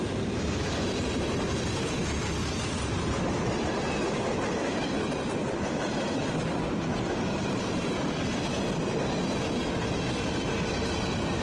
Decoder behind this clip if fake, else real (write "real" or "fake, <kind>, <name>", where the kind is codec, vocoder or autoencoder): real